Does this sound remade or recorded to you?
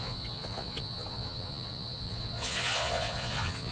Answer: remade